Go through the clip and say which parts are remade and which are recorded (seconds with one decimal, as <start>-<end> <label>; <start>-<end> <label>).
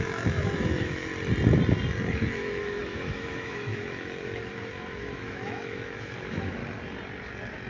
0.0-1.1 remade; 1.1-2.2 recorded; 2.2-6.6 remade; 6.6-7.7 recorded